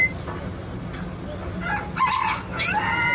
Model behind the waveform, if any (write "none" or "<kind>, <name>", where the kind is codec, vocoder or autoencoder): none